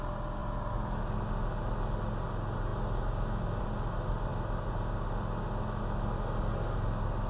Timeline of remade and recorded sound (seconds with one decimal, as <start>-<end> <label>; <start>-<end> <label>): 0.0-0.4 recorded; 0.4-1.0 remade; 1.0-7.3 recorded